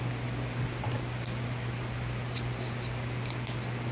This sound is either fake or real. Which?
real